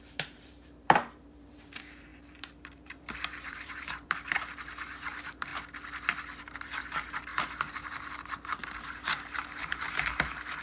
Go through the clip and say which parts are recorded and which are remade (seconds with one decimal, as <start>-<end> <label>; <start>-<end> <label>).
0.0-5.5 remade; 5.5-6.4 recorded; 6.4-10.6 remade